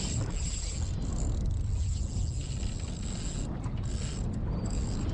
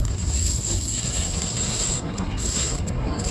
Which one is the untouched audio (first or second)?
first